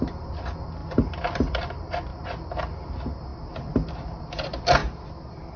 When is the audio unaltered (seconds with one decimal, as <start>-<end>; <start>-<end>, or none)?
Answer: 0.0-5.6